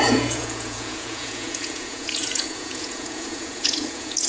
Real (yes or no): no